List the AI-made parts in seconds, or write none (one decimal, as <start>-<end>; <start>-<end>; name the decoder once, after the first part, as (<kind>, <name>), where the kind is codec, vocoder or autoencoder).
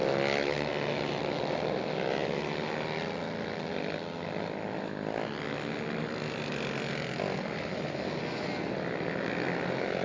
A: none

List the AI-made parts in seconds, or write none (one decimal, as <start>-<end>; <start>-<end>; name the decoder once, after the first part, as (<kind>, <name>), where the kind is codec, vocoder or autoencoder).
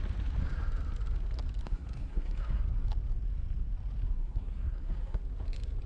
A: 1.6-2.6 (codec, SNAC); 4.2-5.2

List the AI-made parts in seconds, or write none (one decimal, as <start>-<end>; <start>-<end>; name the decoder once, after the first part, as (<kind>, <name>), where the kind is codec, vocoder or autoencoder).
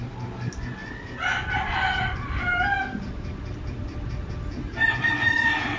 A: 0.8-4.3 (vocoder, BigVGAN v2)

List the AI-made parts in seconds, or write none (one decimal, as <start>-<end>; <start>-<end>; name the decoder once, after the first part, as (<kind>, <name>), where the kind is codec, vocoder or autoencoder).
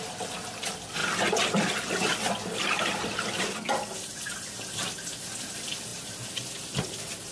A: none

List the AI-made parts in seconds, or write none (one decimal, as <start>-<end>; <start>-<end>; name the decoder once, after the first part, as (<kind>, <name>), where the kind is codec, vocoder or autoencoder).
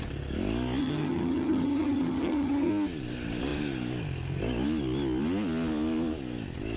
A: 0.8-2.7 (vocoder, HiFi-GAN)